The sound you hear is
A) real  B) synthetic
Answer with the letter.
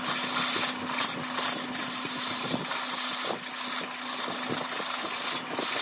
A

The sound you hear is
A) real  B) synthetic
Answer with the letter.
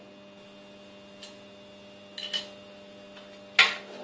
A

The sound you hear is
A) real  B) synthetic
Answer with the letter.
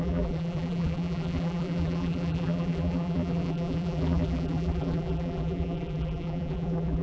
B